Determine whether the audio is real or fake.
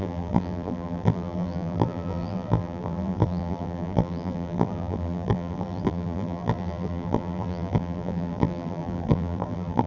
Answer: fake